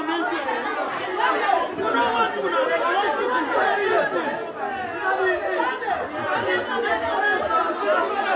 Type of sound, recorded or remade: recorded